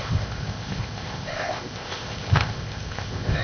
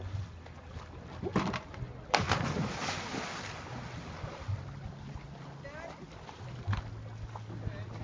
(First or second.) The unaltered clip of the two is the second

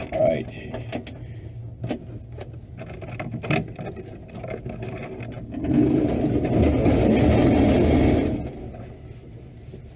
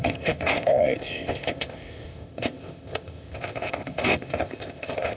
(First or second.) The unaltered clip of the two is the first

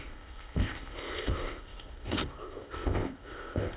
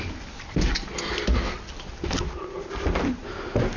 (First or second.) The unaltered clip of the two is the second